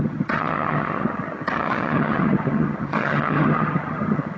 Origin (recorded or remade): remade